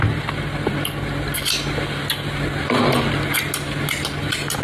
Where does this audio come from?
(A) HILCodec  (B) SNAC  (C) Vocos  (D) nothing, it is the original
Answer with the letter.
D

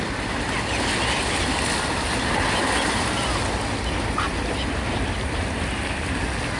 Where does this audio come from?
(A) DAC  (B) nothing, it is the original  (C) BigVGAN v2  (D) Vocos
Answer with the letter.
B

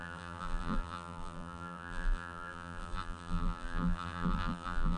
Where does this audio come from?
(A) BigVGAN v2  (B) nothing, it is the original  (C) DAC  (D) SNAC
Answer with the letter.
A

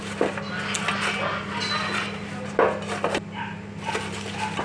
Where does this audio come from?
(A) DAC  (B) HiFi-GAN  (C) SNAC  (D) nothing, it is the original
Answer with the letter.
D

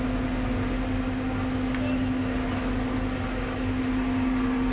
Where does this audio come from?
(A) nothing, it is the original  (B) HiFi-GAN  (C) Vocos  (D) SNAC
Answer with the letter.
A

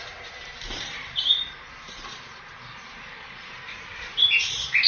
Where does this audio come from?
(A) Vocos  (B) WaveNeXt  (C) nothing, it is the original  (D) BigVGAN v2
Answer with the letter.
D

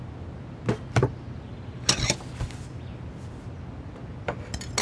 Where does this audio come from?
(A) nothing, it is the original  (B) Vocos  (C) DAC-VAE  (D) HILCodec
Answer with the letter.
A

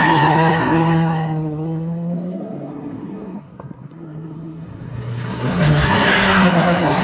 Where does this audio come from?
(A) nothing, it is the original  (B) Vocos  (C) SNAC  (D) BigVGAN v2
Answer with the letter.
C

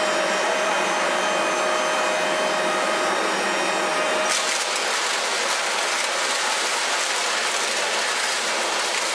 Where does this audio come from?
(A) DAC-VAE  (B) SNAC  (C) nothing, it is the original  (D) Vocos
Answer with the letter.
C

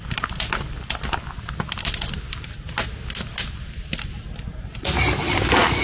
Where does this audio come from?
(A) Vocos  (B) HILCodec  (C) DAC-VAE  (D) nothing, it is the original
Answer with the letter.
D